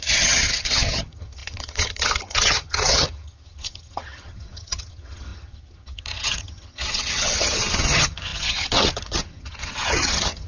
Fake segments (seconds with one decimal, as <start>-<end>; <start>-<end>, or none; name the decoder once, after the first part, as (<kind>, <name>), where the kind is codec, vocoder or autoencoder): 0.0-10.5 (vocoder, HiFi-GAN)